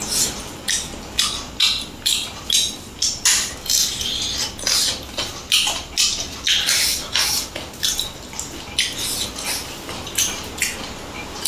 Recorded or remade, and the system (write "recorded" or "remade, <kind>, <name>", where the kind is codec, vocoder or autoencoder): recorded